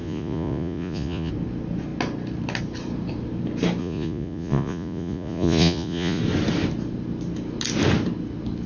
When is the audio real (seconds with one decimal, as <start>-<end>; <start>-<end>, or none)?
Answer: 1.3-3.8; 6.2-8.7